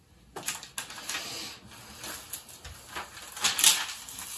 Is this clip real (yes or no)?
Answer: yes